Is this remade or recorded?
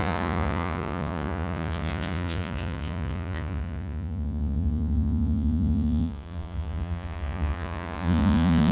remade